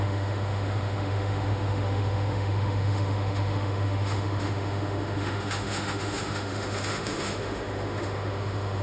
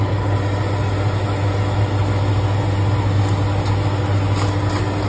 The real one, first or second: second